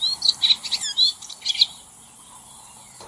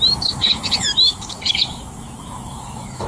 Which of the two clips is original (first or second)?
first